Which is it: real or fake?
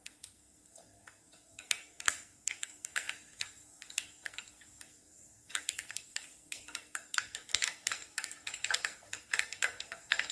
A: fake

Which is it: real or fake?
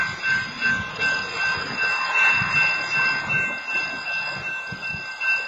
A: real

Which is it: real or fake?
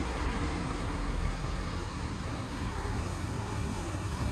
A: fake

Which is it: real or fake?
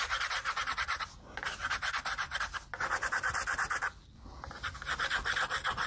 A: real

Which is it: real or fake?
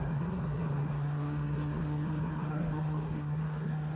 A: fake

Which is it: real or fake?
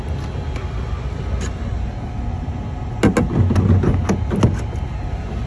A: real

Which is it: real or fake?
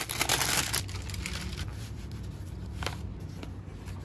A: real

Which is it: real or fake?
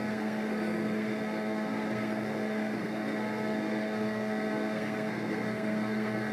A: fake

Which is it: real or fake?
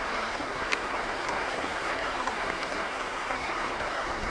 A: fake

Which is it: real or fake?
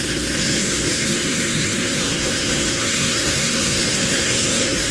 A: fake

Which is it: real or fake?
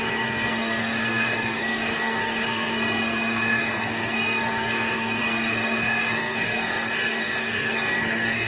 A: fake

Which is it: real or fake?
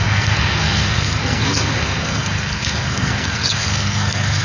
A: fake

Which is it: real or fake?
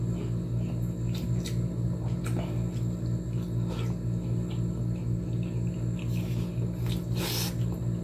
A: real